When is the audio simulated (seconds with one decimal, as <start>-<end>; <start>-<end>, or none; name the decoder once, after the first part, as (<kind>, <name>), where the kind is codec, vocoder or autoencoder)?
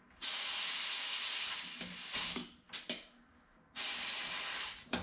none